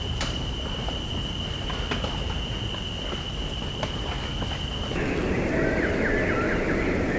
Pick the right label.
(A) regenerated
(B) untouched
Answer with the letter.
B